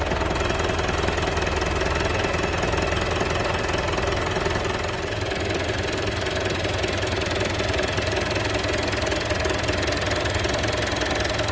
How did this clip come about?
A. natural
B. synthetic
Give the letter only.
A